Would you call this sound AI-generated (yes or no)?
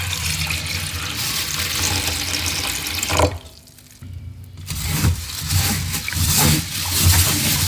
no